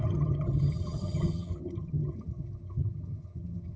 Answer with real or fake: fake